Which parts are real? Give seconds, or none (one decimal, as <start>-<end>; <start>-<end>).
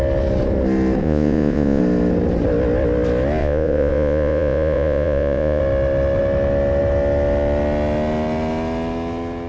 0.0-1.0; 1.8-3.4; 5.6-9.5